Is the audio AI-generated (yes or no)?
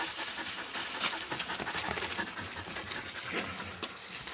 no